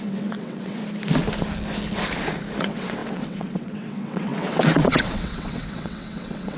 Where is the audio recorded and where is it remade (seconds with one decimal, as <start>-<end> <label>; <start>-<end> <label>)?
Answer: 0.0-0.8 remade; 0.8-2.6 recorded; 2.6-6.6 remade